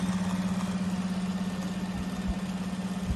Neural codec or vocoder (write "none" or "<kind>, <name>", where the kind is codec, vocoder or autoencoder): none